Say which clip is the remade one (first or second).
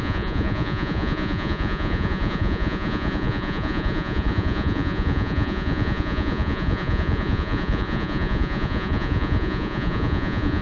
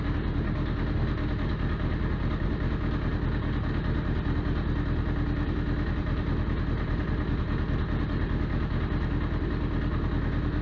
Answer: first